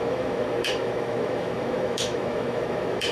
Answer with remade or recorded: remade